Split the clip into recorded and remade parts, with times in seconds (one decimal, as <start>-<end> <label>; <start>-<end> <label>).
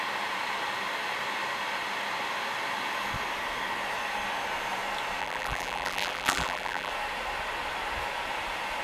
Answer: 0.0-5.2 recorded; 5.2-6.9 remade; 6.9-8.8 recorded